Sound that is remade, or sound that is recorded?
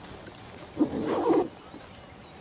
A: recorded